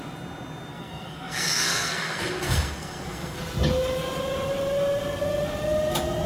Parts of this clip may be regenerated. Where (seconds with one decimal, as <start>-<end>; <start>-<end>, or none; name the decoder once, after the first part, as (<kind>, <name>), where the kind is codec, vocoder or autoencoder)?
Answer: 0.7-3.4 (codec, SNAC)